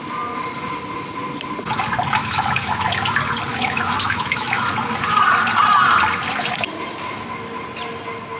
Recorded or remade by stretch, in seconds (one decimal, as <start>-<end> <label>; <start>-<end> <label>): 0.0-2.2 recorded; 2.2-2.9 remade; 2.9-3.5 recorded; 3.5-4.7 remade; 4.7-8.4 recorded